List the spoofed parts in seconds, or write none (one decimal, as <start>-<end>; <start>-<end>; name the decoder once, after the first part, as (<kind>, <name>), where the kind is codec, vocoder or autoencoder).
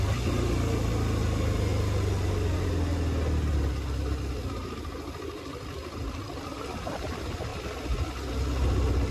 none